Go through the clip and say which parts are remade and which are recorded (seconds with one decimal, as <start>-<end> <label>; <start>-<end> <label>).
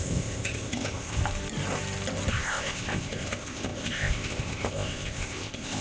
0.0-1.2 remade; 1.2-2.3 recorded; 2.3-5.8 remade